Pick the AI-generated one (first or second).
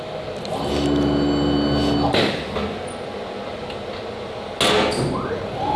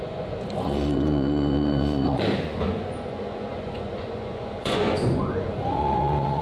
second